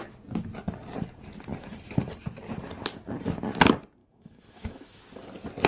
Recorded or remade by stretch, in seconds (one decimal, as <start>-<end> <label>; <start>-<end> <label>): 0.0-4.0 recorded; 4.0-5.0 remade; 5.0-5.7 recorded